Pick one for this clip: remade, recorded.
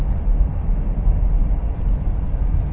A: recorded